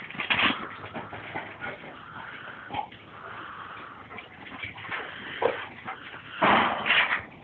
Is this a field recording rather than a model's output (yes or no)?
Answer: yes